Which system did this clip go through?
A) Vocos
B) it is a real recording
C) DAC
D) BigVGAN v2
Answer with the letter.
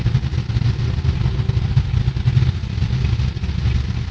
B